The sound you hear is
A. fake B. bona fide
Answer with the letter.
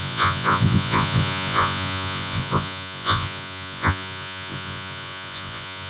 A